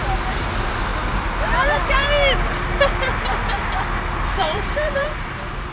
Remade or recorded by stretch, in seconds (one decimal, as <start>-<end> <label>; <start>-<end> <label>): 0.0-0.9 remade; 0.9-4.3 recorded; 4.3-5.7 remade